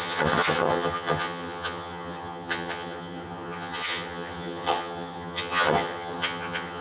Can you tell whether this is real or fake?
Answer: fake